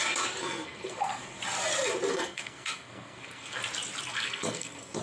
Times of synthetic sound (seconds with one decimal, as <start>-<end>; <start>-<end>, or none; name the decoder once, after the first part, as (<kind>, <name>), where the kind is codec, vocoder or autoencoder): 0.4-1.4 (codec, SNAC); 2.1-3.6; 4.1-5.0